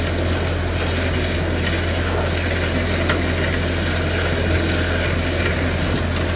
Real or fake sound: real